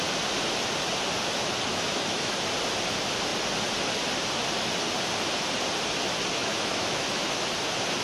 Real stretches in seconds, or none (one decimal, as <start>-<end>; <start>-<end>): 0.0-1.7; 2.3-6.4; 7.3-8.0